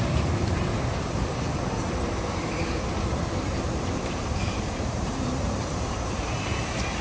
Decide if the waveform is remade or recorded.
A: remade